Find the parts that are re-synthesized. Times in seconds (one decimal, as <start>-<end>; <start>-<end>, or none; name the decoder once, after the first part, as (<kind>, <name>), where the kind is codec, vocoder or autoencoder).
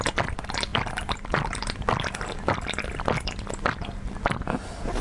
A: 0.7-2.8 (vocoder, BigVGAN v2)